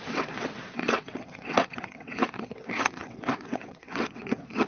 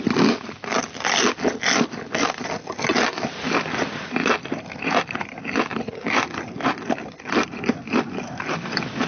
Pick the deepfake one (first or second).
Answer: first